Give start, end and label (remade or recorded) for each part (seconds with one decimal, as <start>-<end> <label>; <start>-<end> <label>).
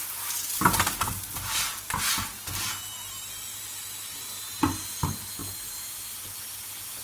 0.0-3.5 recorded; 3.5-4.2 remade; 4.2-7.0 recorded